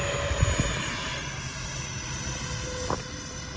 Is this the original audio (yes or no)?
yes